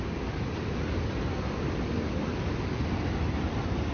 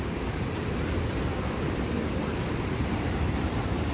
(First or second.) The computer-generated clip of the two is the second